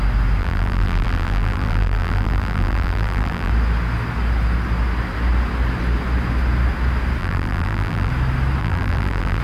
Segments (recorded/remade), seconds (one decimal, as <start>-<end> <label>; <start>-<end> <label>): 0.0-0.4 recorded; 0.4-3.5 remade; 3.5-7.2 recorded; 7.2-8.1 remade; 8.1-8.6 recorded; 8.6-9.4 remade

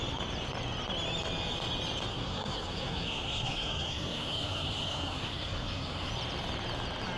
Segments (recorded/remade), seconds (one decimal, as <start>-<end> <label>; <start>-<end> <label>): 0.0-2.1 recorded; 2.1-6.1 remade; 6.1-7.2 recorded

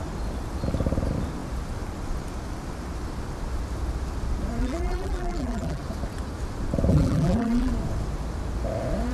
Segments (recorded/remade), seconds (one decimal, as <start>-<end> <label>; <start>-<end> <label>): 0.0-4.6 recorded; 4.6-5.8 remade; 5.8-6.9 recorded; 6.9-7.7 remade; 7.7-9.1 recorded

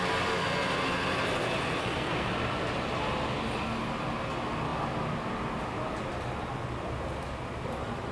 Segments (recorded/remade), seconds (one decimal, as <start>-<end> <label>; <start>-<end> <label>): 0.0-1.8 recorded; 1.8-2.3 remade; 2.3-8.1 recorded

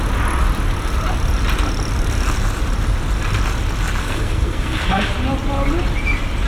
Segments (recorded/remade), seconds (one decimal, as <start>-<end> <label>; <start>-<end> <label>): 0.0-4.0 recorded; 4.0-5.1 remade; 5.1-6.5 recorded

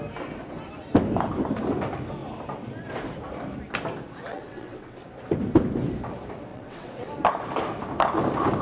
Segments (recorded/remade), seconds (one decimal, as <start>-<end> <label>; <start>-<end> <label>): 0.0-4.3 recorded; 4.3-5.0 remade; 5.0-6.5 recorded; 6.5-7.1 remade; 7.1-8.6 recorded

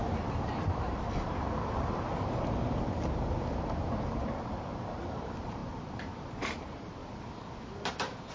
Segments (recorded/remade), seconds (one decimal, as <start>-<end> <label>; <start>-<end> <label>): 0.0-7.0 remade; 7.0-7.9 recorded; 7.9-8.3 remade